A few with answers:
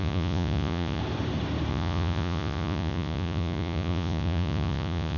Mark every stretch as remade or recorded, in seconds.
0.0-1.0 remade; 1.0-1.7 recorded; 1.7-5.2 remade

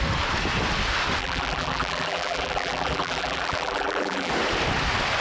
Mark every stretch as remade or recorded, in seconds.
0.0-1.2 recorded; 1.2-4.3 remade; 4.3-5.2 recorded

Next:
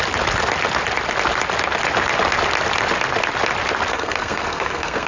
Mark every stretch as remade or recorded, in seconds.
0.0-3.9 recorded; 3.9-5.1 remade